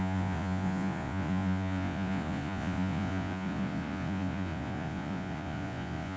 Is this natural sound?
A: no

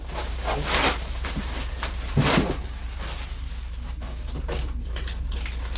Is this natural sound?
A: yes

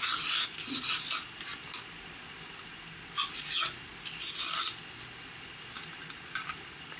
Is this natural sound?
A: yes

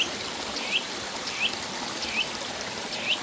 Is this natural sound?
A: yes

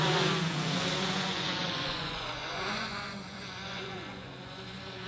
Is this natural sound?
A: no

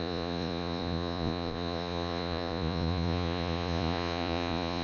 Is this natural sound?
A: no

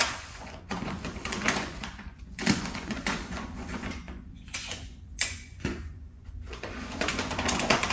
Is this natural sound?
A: no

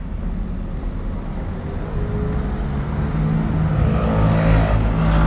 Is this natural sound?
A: yes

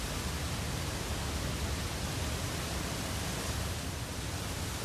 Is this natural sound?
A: yes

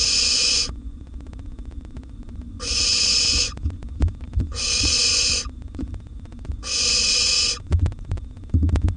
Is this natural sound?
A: no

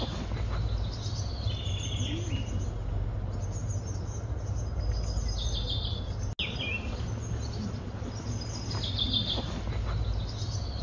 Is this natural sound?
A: yes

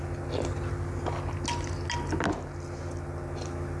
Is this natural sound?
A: yes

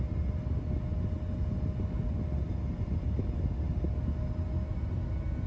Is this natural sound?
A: yes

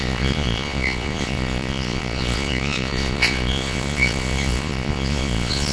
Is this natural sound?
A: no